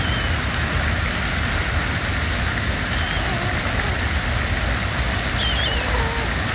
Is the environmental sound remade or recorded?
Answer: recorded